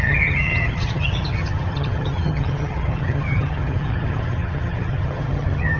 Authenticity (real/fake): fake